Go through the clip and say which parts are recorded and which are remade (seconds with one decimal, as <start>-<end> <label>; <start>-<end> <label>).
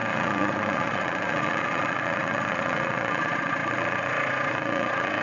0.0-5.2 remade